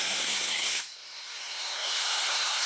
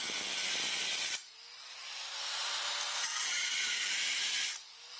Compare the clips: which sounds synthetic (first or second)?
first